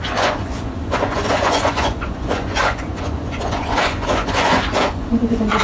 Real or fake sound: fake